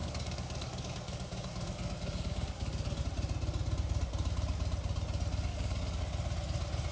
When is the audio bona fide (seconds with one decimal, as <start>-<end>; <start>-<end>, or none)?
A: 3.0-5.5; 6.0-6.9